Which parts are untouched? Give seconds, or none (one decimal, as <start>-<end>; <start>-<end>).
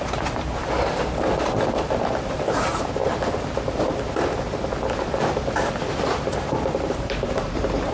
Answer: 0.6-2.2; 3.0-6.3